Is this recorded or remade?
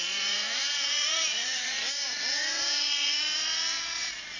remade